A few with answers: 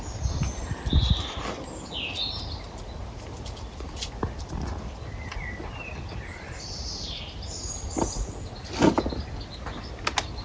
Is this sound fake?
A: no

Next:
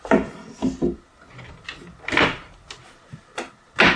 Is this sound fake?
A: no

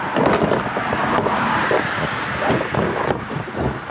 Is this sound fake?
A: no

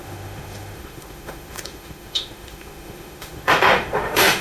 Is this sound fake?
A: yes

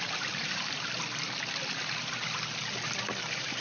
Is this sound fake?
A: no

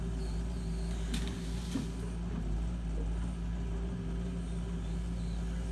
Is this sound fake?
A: no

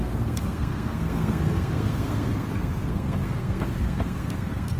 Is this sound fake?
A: yes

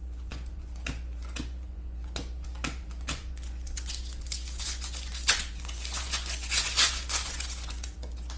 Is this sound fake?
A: yes